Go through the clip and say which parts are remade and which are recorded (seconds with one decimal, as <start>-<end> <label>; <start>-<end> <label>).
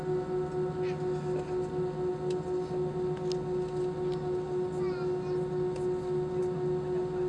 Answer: 0.0-7.3 recorded